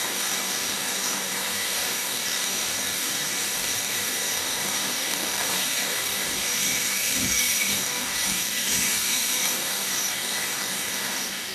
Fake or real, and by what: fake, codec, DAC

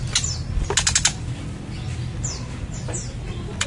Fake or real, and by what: real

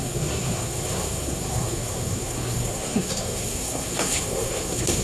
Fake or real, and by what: fake, codec, SNAC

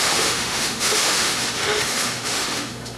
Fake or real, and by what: fake, autoencoder, DAC-VAE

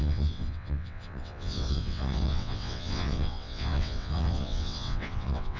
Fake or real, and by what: fake, vocoder, WaveNeXt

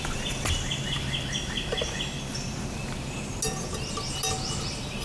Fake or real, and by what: real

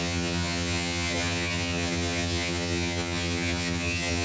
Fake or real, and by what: fake, vocoder, HiFi-GAN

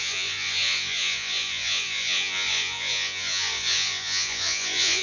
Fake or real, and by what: fake, vocoder, Vocos